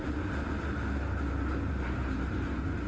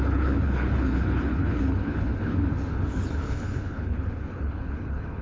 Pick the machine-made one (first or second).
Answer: second